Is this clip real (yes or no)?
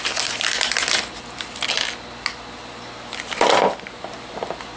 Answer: yes